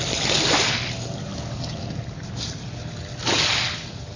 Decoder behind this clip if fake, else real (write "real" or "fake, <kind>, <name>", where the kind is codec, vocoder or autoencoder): real